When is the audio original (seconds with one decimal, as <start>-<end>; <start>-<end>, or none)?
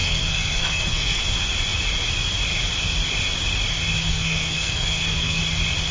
1.2-4.1; 5.4-5.9